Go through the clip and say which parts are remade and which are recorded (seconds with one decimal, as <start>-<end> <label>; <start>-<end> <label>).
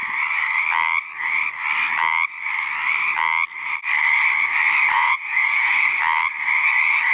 0.0-4.9 recorded; 4.9-6.0 remade; 6.0-7.1 recorded